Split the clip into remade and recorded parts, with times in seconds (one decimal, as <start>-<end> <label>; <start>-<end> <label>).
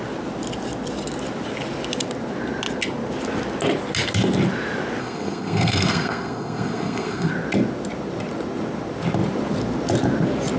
0.0-5.0 recorded; 5.0-7.3 remade; 7.3-10.6 recorded